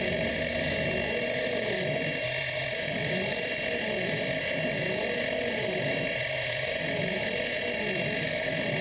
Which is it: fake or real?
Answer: real